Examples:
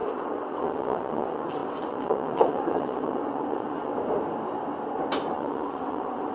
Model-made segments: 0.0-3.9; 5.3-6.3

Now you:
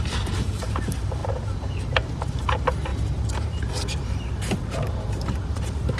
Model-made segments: 0.0-6.0